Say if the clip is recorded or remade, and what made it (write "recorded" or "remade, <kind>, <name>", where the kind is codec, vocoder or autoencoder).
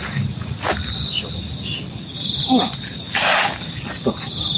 recorded